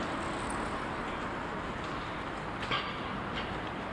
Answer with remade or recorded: recorded